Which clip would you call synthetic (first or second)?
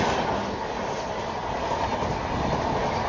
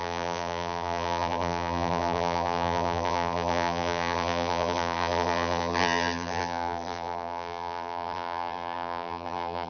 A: second